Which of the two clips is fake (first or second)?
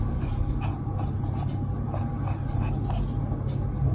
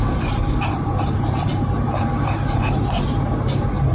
second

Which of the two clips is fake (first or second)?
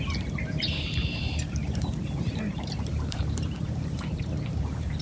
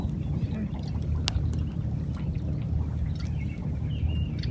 first